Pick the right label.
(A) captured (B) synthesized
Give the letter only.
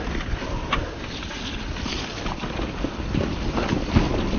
A